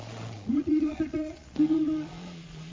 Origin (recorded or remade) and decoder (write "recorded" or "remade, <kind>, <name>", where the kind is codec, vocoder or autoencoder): remade, vocoder, Vocos